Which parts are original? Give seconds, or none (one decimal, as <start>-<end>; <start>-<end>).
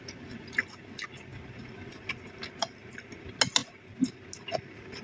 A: 0.0-5.0